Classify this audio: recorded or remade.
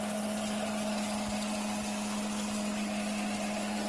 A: recorded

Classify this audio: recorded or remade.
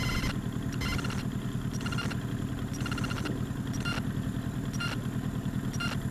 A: recorded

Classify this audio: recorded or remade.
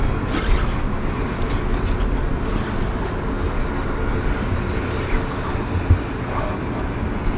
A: recorded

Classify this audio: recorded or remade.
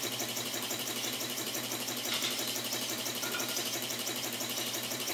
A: remade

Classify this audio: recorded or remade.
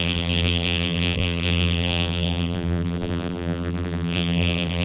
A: remade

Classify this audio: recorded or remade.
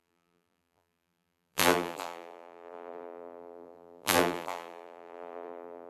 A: remade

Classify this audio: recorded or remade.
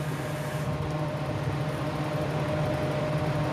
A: recorded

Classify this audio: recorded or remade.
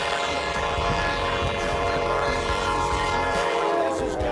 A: remade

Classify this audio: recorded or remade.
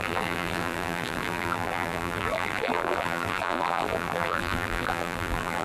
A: remade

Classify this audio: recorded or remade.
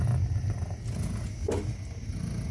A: recorded